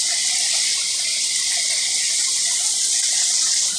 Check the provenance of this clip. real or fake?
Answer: real